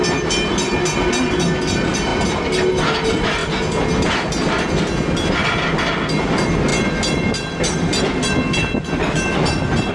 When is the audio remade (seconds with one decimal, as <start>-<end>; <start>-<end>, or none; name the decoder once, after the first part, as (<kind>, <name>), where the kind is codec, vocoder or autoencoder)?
none